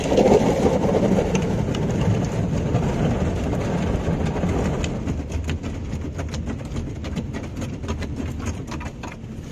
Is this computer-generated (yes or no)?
no